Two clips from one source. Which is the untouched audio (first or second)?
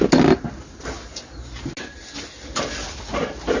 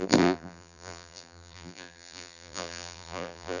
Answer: first